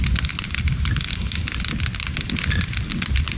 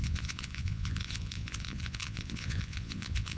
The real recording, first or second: first